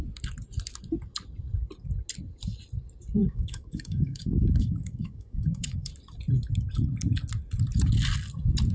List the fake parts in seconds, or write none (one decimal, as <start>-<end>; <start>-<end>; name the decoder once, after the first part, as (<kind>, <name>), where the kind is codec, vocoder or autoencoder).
3.2-5.9 (autoencoder, DAC-VAE)